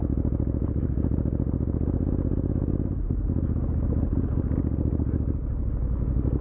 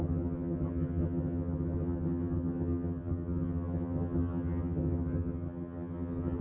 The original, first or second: first